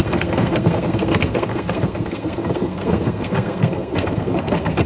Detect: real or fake fake